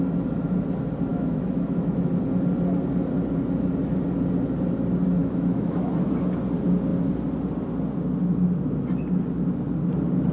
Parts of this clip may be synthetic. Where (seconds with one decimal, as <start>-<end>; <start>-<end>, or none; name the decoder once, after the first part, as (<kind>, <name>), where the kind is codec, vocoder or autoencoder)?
1.1-2.1 (autoencoder, DAC-VAE); 5.2-5.9

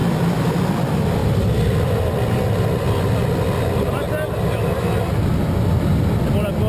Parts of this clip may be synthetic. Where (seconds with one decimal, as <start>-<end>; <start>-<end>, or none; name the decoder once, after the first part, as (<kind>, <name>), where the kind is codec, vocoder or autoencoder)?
none

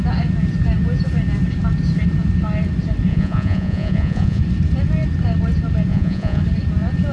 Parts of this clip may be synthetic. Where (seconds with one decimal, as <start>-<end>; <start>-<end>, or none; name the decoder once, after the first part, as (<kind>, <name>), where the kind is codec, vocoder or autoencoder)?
3.1-4.4 (vocoder, Vocos); 5.9-6.4

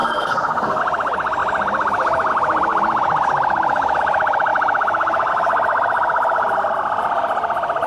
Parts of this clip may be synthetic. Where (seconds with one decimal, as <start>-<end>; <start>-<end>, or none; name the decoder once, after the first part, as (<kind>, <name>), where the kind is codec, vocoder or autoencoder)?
0.0-0.8 (codec, SNAC)

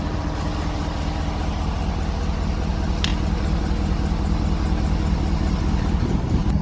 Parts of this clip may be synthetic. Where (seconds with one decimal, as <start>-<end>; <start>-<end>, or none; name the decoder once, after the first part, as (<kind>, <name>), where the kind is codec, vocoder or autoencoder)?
none

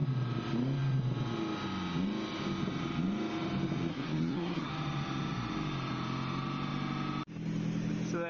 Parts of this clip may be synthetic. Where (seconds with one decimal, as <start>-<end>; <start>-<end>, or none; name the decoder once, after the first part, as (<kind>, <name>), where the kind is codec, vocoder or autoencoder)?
3.9-4.7 (codec, SNAC)

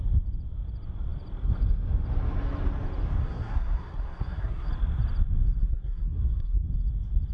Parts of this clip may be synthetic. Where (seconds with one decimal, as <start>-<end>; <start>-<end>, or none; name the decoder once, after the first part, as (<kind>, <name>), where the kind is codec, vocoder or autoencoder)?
3.2-4.7 (codec, SNAC); 5.6-6.6

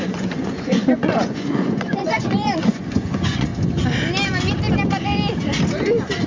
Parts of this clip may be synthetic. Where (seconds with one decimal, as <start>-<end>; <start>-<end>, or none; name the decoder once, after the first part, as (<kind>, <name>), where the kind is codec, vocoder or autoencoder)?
0.0-3.5 (vocoder, Vocos)